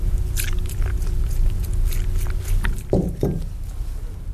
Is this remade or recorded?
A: recorded